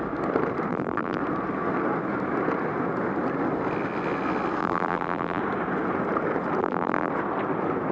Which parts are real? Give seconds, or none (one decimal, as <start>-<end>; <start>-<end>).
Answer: 0.0-0.7; 1.2-4.6; 5.4-6.6; 7.1-7.9